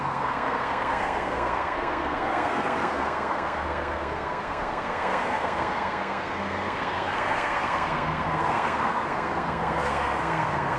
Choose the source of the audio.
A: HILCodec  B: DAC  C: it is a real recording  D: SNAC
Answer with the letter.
D